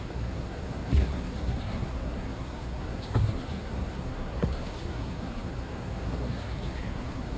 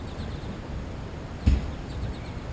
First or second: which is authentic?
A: second